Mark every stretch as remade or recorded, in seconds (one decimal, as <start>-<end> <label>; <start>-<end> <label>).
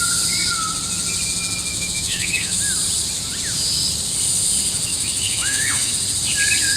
0.0-1.7 recorded; 1.7-2.6 remade; 2.6-4.9 recorded; 4.9-5.9 remade; 5.9-6.8 recorded